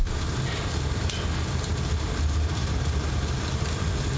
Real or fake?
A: real